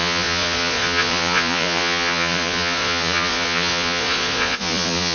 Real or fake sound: fake